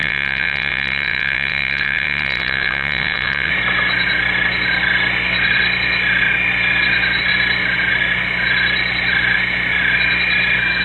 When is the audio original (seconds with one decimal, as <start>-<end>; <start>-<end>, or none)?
3.5-10.8